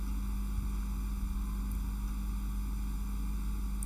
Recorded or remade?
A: recorded